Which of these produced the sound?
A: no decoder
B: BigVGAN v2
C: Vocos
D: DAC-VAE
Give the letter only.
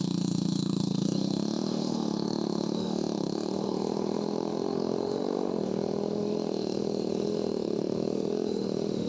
D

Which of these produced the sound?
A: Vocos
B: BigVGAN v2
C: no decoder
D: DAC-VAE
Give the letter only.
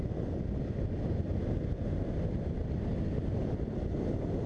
C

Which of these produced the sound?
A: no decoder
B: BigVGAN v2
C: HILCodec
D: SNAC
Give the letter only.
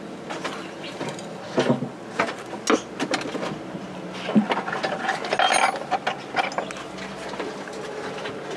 A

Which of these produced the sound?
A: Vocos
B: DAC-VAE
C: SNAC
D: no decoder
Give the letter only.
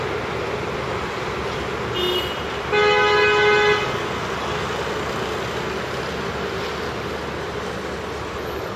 D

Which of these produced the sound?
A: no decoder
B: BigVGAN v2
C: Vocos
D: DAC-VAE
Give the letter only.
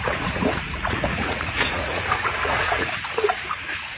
C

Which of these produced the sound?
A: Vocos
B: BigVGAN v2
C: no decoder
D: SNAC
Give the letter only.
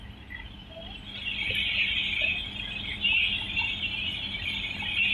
C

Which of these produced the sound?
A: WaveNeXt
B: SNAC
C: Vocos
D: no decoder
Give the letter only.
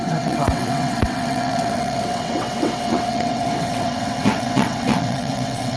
A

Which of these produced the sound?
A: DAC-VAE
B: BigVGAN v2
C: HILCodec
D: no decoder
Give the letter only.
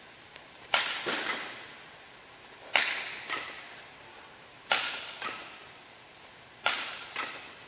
B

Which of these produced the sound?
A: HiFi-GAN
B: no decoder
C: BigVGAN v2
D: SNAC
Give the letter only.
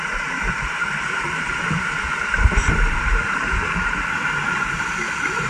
C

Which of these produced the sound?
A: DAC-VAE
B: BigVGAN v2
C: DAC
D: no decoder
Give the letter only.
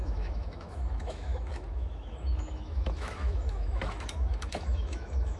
A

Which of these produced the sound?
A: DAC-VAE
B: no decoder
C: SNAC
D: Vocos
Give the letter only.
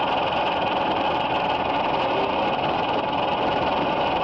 B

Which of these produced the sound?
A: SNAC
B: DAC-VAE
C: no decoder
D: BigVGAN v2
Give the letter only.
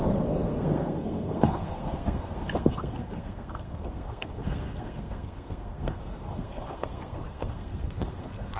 A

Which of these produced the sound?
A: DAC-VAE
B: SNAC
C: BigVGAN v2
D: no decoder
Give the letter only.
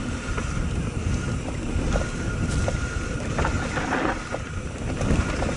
D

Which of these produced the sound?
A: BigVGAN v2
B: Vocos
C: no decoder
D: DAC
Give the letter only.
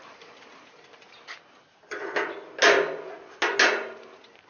C